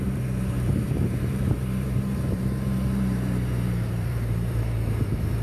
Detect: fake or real fake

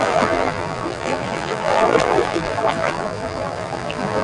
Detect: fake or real fake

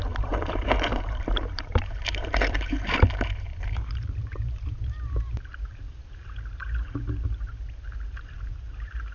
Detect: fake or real fake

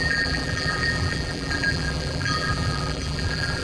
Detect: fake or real fake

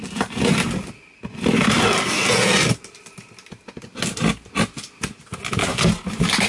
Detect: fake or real real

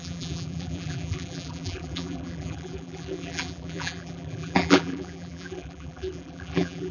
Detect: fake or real fake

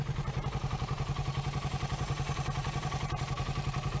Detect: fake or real fake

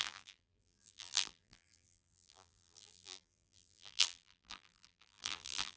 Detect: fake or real fake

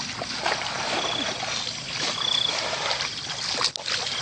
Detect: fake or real real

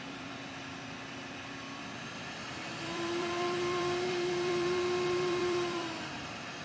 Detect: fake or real fake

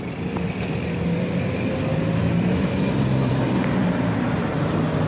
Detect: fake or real fake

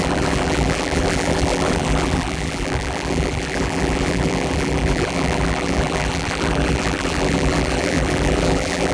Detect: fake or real fake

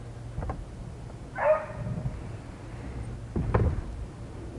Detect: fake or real real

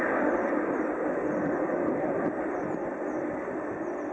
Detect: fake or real fake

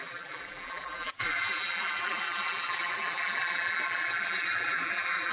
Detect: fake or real fake